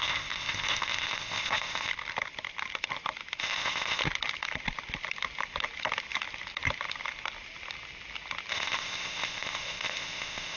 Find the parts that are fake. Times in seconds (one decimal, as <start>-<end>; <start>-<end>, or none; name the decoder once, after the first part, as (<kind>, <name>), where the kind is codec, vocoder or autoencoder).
0.0-1.9 (codec, ZipCodec); 3.4-4.0; 8.5-10.6